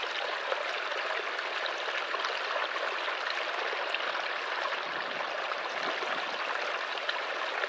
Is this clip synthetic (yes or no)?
no